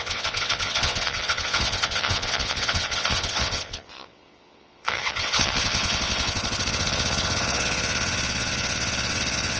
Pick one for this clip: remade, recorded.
remade